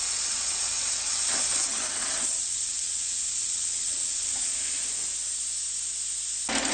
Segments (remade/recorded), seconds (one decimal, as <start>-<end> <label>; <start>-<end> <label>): 0.0-4.5 remade; 4.5-6.7 recorded